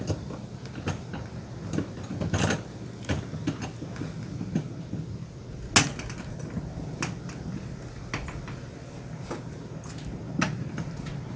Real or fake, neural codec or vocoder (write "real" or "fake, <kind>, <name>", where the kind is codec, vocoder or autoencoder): real